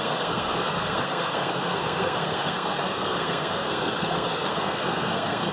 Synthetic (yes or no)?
yes